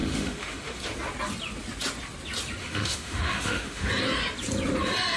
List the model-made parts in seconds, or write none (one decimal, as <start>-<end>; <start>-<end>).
0.0-0.8; 2.6-3.9